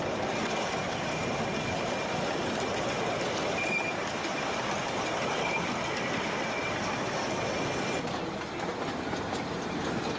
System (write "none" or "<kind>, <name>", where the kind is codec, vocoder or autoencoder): none